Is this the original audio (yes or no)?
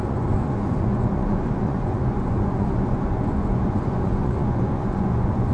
no